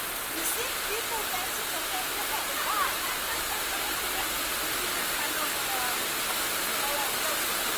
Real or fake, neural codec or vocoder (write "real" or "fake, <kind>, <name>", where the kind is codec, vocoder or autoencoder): real